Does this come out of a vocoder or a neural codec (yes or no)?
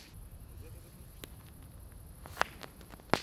no